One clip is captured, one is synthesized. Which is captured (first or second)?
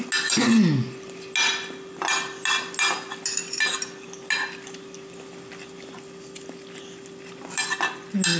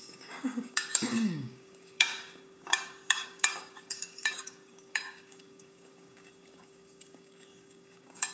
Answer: first